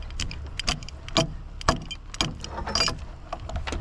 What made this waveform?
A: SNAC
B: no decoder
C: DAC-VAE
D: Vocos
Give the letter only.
B